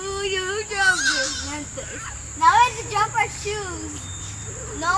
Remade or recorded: recorded